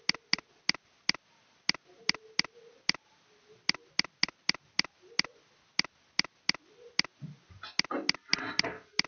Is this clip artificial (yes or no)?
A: no